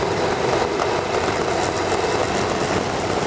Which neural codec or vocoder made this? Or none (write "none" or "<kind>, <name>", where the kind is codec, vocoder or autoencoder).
none